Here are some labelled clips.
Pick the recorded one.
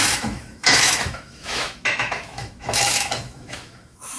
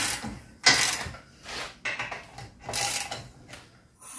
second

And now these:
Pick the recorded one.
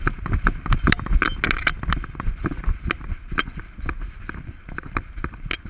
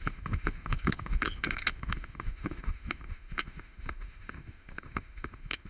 first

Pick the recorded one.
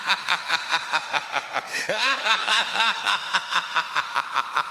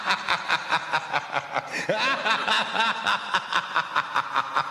second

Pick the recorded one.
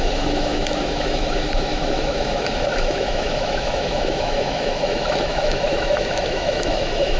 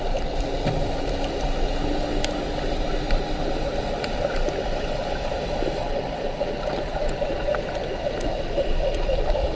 second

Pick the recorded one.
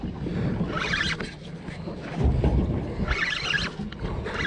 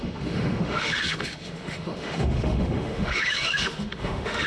first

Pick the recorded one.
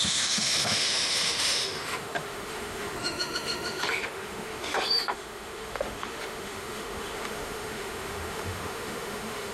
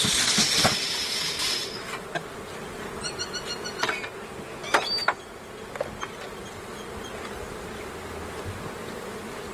second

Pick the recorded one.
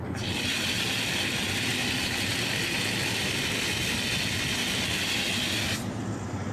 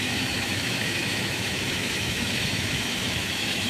first